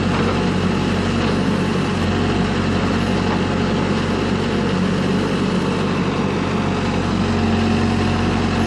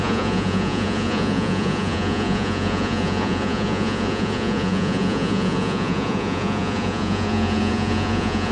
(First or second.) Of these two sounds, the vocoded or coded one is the second